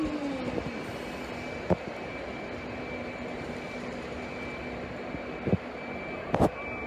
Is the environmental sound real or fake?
real